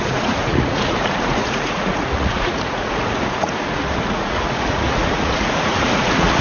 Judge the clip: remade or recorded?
remade